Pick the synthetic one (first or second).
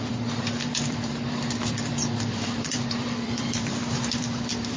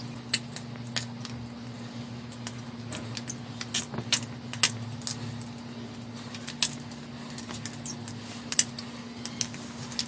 first